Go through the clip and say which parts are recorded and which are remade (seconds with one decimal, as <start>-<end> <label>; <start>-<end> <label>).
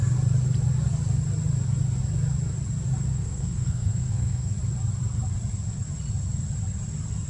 0.0-3.1 recorded; 3.1-4.5 remade; 4.5-7.3 recorded